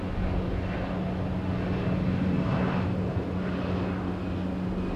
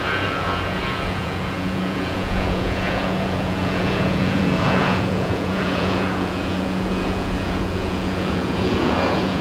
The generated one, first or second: second